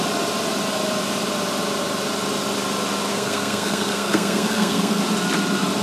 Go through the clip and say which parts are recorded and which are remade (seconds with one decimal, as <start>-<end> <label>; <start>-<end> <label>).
0.0-3.1 recorded; 3.1-5.0 remade; 5.0-5.8 recorded

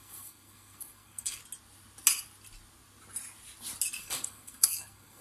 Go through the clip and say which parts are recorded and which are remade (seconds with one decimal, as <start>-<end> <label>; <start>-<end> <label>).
0.0-1.4 remade; 1.4-4.0 recorded; 4.0-5.2 remade

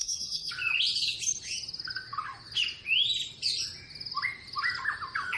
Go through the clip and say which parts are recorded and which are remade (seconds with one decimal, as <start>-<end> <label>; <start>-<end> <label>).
0.0-0.5 remade; 0.5-5.4 recorded

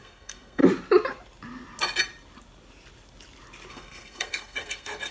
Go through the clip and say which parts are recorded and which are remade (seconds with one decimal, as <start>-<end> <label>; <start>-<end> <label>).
0.0-0.6 remade; 0.6-3.7 recorded; 3.7-5.1 remade